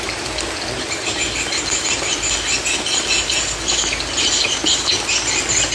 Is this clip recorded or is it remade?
recorded